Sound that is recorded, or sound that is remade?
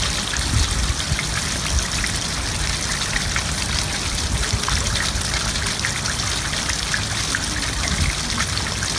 recorded